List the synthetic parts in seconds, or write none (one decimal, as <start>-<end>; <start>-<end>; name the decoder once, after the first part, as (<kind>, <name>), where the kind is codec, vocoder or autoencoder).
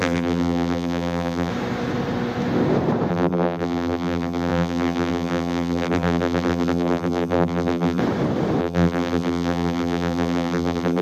0.0-1.5 (vocoder, BigVGAN v2); 3.1-8.0; 8.6-11.0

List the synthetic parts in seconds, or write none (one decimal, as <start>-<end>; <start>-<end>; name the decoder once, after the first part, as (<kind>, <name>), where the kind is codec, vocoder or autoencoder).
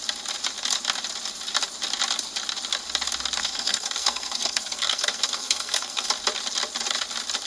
3.4-6.1 (codec, SNAC)